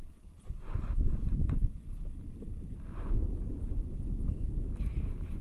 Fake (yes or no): no